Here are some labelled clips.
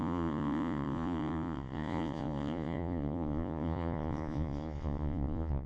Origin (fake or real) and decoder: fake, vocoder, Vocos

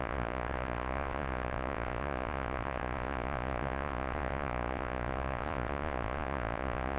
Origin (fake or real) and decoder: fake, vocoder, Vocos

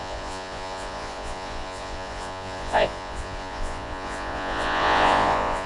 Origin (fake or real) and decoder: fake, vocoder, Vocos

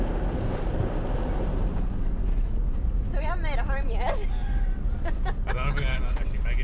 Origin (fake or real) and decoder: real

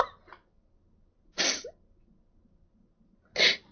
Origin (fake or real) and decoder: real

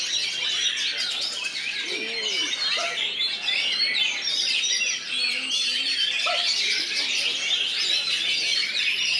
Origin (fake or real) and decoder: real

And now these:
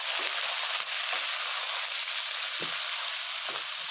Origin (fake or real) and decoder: real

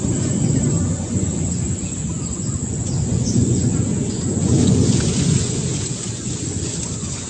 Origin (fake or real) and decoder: fake, vocoder, Vocos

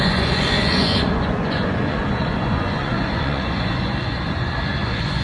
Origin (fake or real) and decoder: fake, vocoder, Vocos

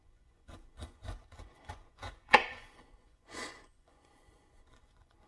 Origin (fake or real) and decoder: fake, vocoder, Vocos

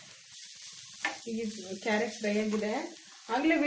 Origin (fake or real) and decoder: real